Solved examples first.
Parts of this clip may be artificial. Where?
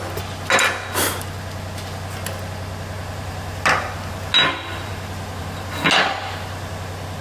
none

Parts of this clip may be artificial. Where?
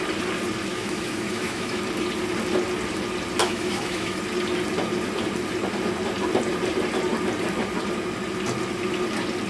0.7-1.8 (autoencoder, DAC-VAE); 3.4-4.2